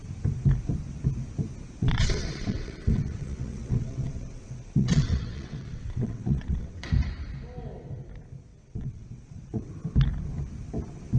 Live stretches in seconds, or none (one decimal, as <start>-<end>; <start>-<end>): 0.0-1.8; 6.9-8.5; 9.7-11.2